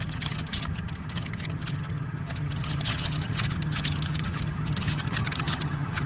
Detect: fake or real fake